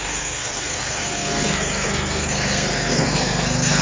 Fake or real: fake